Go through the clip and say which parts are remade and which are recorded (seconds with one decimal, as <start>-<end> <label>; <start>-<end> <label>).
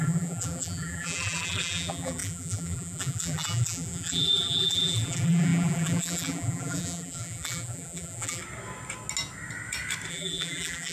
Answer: 0.0-8.4 remade; 8.4-10.1 recorded; 10.1-10.9 remade